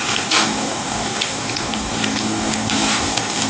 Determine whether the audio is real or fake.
fake